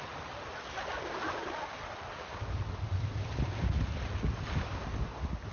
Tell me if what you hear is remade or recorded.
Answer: recorded